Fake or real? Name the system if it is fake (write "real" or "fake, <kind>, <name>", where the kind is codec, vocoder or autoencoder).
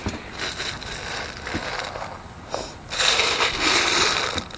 real